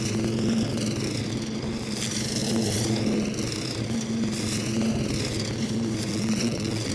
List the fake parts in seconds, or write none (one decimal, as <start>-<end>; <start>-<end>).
6.1-6.9